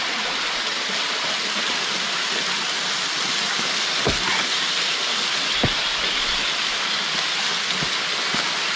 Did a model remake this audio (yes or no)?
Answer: no